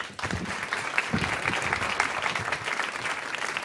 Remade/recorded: recorded